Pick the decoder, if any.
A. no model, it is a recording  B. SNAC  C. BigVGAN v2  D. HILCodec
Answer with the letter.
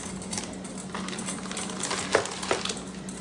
A